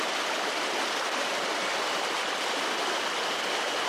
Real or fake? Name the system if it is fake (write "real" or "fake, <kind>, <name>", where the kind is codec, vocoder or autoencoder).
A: real